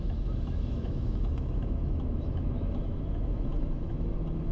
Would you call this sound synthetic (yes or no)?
yes